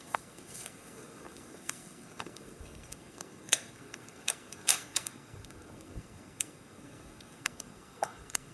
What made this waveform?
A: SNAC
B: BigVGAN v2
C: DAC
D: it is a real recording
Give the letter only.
A